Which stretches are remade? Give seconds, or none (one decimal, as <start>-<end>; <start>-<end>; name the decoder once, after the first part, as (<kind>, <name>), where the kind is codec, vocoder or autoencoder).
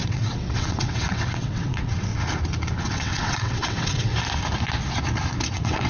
0.0-2.1 (vocoder, WaveNeXt); 2.8-4.1; 5.5-5.9